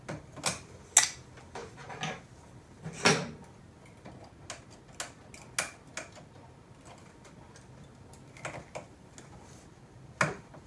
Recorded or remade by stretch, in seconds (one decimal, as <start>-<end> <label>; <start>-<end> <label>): 0.0-10.7 recorded